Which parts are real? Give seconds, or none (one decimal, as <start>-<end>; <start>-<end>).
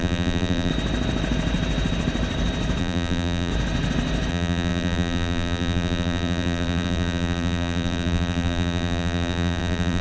0.7-2.8; 3.5-4.3